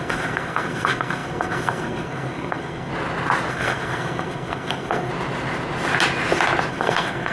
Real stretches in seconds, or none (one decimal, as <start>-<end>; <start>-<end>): 2.9-3.5; 5.1-6.7